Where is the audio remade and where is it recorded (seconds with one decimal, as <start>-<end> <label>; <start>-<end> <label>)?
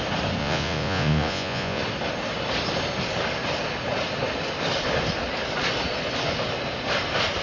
0.0-0.4 recorded; 0.4-1.8 remade; 1.8-7.4 recorded